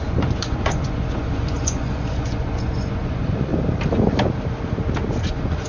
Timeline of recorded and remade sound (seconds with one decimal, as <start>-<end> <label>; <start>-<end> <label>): 0.0-3.5 remade; 3.5-5.3 recorded; 5.3-5.7 remade